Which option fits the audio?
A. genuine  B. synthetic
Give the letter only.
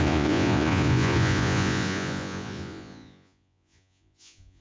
B